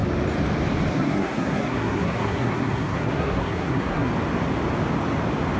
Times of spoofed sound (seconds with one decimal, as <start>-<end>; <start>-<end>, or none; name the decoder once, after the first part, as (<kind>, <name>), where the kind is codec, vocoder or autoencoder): 0.9-4.1 (codec, SNAC)